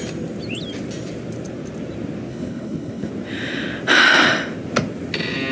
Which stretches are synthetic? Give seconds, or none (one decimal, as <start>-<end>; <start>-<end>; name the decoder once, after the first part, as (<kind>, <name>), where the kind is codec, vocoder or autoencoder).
2.3-3.1 (codec, HILCodec)